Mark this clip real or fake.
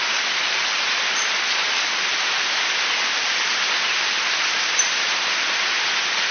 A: real